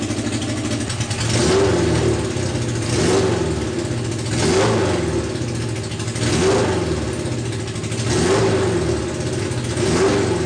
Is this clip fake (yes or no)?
no